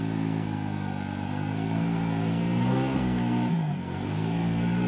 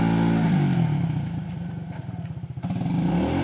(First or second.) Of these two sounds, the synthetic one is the first